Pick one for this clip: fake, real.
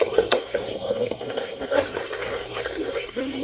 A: fake